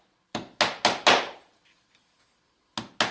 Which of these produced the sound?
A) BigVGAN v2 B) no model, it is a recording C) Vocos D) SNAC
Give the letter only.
B